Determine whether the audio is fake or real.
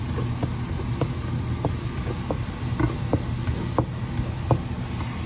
real